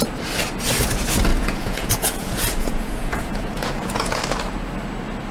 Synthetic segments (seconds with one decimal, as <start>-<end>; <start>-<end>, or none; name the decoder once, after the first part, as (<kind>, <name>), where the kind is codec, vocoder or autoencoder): 1.3-4.2 (vocoder, Vocos)